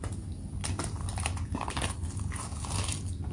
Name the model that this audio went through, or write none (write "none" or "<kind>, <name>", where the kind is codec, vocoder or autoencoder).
none